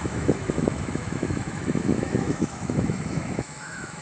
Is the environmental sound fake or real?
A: fake